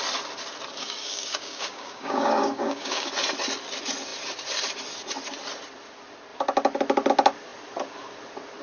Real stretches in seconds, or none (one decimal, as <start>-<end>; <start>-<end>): 0.0-0.8; 3.1-8.6